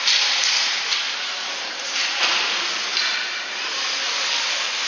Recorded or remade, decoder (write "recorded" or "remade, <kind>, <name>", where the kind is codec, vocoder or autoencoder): recorded